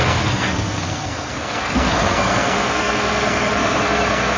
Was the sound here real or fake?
fake